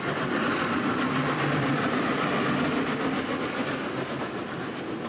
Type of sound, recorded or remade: recorded